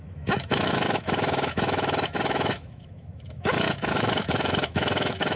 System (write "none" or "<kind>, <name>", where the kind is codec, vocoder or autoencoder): autoencoder, DAC-VAE